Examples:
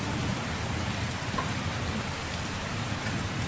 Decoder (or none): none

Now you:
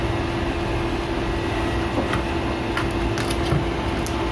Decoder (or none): none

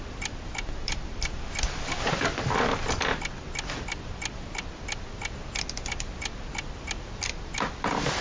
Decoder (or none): none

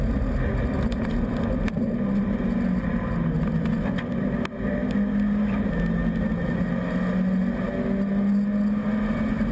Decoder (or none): none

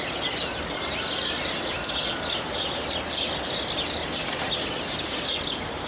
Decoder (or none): none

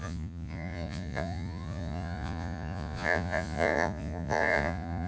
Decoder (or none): vocoder, Vocos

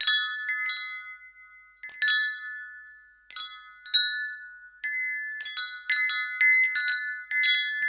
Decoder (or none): none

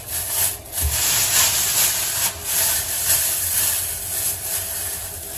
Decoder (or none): none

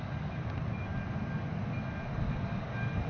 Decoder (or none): none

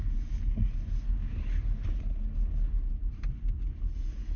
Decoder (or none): none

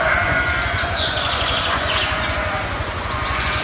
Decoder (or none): vocoder, Vocos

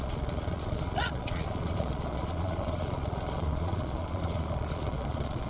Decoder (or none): vocoder, Vocos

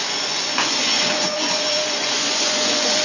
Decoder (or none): vocoder, Vocos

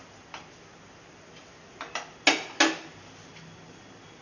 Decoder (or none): none